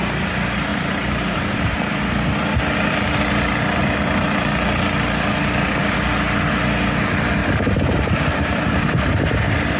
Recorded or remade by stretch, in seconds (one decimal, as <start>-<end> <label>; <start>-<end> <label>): 0.0-0.7 recorded; 0.7-1.9 remade; 1.9-7.4 recorded; 7.4-9.4 remade; 9.4-9.8 recorded